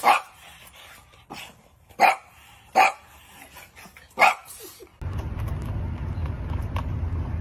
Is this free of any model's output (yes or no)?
yes